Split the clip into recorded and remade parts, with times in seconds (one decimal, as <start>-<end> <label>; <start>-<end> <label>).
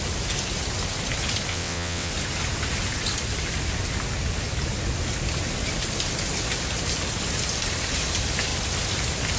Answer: 0.0-1.5 recorded; 1.5-2.1 remade; 2.1-9.4 recorded